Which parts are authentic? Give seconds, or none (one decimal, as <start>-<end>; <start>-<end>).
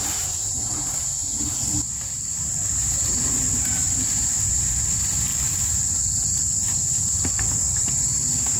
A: 5.3-7.5